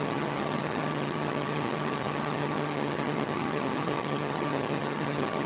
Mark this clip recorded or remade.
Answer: remade